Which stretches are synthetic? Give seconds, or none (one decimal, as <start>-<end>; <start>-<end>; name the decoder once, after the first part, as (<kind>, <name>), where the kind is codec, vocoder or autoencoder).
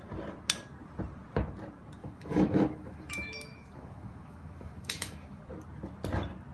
2.0-5.4 (autoencoder, DAC-VAE)